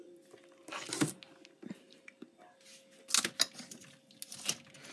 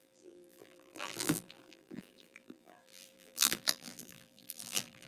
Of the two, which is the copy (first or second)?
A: second